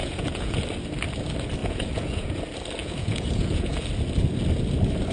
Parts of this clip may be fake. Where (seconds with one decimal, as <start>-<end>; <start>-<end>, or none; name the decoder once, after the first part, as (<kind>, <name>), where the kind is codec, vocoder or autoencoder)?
0.0-0.6 (vocoder, Vocos); 1.6-2.4; 2.8-3.8